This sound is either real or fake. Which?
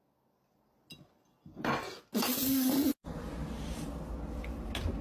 real